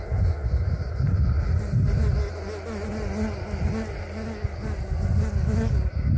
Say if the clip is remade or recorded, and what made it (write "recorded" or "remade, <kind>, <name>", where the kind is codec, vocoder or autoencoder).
recorded